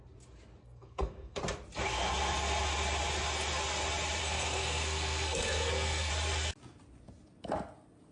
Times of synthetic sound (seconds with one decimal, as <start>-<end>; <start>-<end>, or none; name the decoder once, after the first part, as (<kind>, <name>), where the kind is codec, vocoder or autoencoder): 0.6-1.4 (codec, SNAC); 4.2-6.1